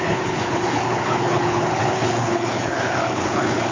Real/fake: fake